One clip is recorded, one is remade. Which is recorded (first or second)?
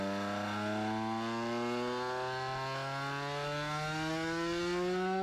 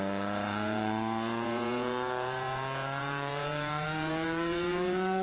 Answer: first